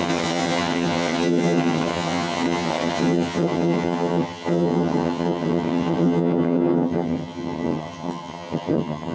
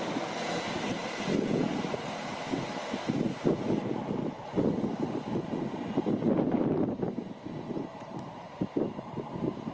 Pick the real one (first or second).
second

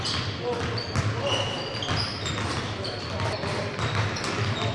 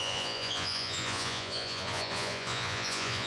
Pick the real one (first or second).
first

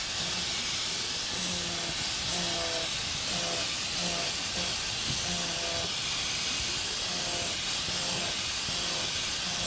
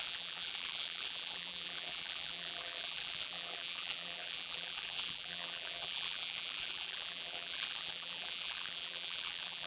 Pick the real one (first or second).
first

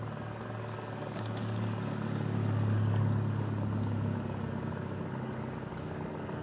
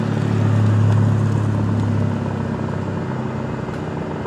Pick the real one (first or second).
second